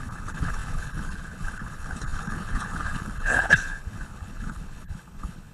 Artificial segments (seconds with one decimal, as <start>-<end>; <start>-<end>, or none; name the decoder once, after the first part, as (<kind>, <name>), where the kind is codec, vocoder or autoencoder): 0.0-5.5 (codec, HILCodec)

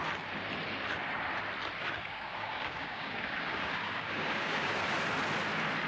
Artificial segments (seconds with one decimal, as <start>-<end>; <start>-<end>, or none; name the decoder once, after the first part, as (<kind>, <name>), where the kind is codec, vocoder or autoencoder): 1.8-4.8 (codec, DAC)